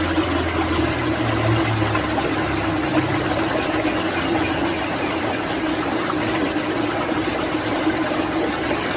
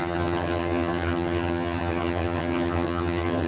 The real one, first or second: first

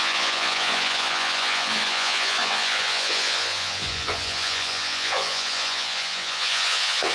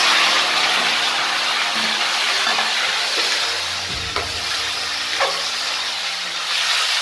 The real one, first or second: second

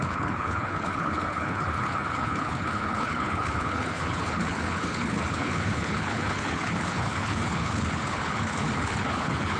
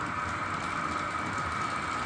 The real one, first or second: second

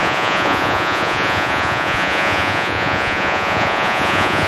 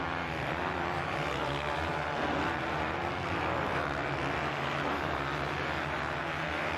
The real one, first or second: second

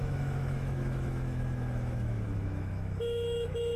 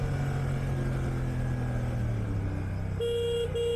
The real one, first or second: second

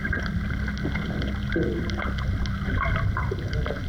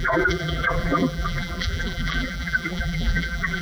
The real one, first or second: first